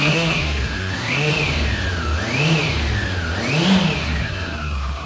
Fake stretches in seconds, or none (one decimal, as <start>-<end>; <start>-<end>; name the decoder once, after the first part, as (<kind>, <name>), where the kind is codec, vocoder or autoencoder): 0.0-1.3 (codec, SNAC); 4.0-5.1

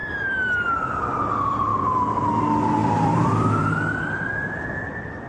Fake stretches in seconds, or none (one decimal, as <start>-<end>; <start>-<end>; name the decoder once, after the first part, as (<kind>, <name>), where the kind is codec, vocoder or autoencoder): 0.0-1.0 (vocoder, BigVGAN v2); 1.7-2.4; 2.8-3.7

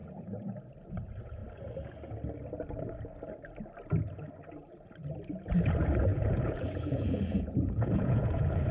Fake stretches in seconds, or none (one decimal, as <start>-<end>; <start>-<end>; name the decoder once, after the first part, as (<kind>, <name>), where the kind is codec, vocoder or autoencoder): 6.1-8.7 (vocoder, Vocos)

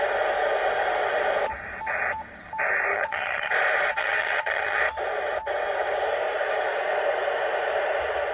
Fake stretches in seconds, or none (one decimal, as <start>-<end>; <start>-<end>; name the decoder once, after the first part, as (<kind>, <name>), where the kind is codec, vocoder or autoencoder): 2.9-3.5 (vocoder, HiFi-GAN); 4.0-4.8